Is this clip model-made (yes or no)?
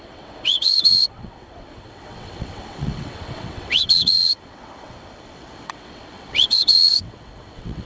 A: yes